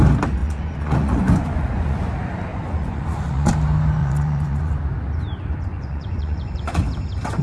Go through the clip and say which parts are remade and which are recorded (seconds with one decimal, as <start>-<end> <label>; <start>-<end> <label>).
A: 0.0-0.4 recorded; 0.4-2.0 remade; 2.0-2.5 recorded; 2.5-3.5 remade; 3.5-4.0 recorded; 4.0-4.7 remade; 4.7-5.7 recorded; 5.7-6.8 remade; 6.8-7.4 recorded